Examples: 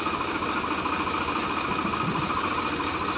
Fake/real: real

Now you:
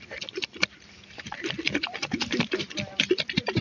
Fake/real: real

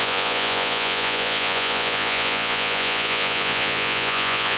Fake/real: fake